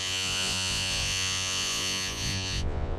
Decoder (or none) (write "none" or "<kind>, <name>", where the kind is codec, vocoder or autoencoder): vocoder, Vocos